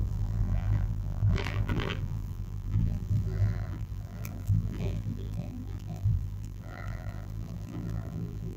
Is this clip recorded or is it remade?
remade